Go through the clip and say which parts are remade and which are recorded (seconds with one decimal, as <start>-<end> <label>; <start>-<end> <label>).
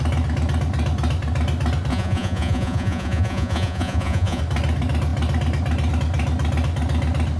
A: 0.0-1.9 recorded; 1.9-4.4 remade; 4.4-7.4 recorded